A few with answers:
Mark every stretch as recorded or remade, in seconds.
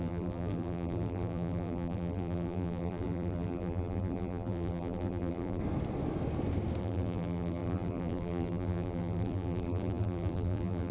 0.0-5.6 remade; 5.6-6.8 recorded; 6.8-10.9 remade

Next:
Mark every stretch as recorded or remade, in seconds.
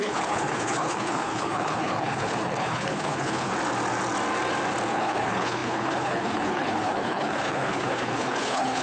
0.0-3.5 remade; 3.5-4.9 recorded; 4.9-8.8 remade